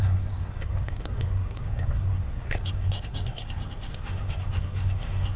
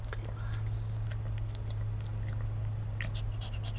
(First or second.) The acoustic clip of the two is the second